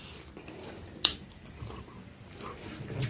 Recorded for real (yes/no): yes